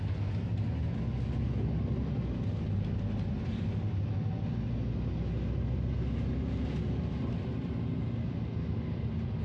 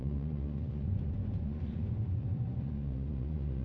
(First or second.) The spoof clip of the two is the second